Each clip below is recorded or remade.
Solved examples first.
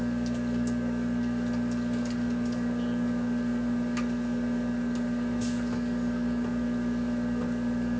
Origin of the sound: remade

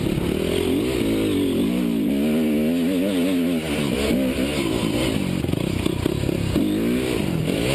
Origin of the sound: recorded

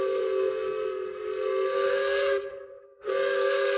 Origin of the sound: remade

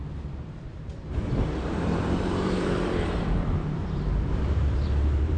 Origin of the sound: remade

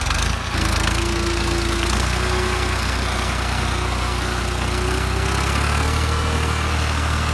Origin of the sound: remade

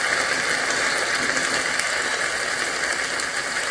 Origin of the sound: recorded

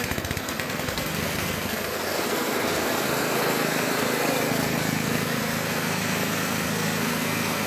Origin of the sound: remade